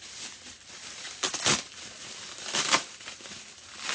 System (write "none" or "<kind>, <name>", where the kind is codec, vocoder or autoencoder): none